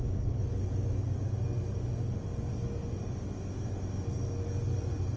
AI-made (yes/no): no